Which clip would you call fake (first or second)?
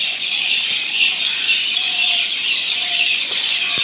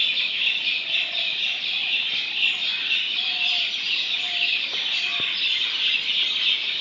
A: first